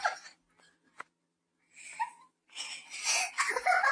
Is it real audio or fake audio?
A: real